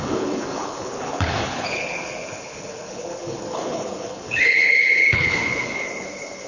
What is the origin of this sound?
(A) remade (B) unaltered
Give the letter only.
A